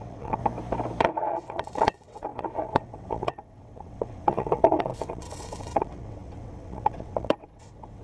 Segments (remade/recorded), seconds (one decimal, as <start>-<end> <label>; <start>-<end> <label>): 0.0-0.4 remade; 0.4-1.0 recorded; 1.0-8.0 remade